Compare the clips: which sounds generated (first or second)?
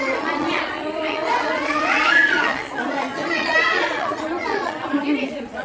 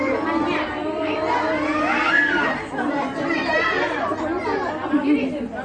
first